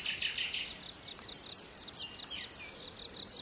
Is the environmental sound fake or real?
real